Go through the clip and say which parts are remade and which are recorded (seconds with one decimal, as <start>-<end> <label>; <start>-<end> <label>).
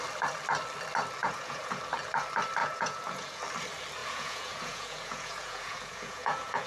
0.0-1.2 recorded; 1.2-1.8 remade; 1.8-2.6 recorded; 2.6-3.4 remade; 3.4-4.0 recorded; 4.0-6.7 remade